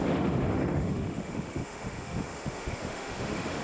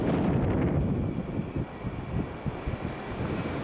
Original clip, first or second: second